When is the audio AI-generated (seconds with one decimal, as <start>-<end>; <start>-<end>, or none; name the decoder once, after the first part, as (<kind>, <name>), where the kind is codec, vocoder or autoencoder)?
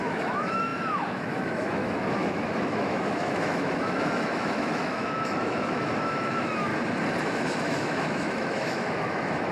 0.0-6.7 (autoencoder, DAC-VAE); 7.2-9.5